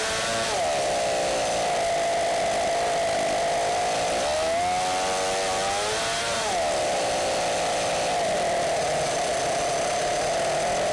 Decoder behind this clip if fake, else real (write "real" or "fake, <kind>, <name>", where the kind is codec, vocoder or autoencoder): real